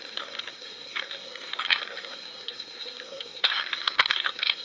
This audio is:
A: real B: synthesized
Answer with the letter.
B